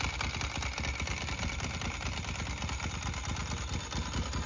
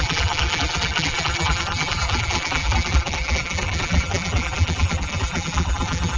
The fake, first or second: second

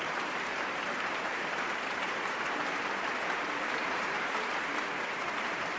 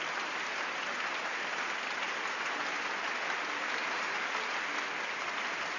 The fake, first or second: first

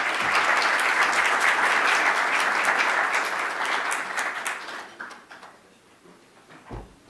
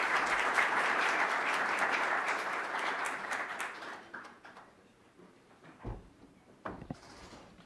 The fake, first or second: second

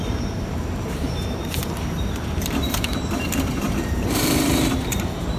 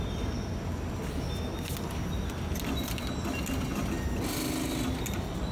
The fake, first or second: first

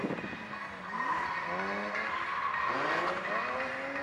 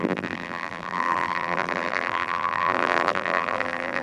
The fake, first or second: second